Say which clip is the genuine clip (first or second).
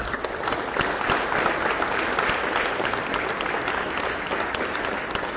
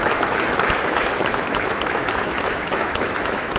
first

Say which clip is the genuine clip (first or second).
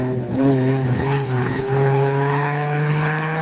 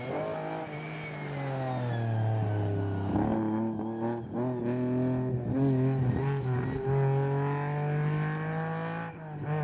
second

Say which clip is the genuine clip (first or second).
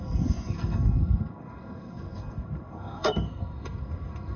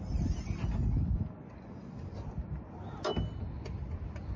second